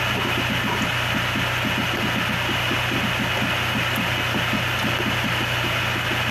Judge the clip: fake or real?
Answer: real